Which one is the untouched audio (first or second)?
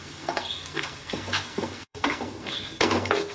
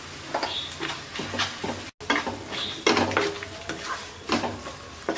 second